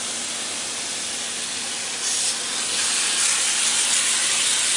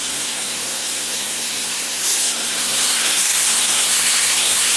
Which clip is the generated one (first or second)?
second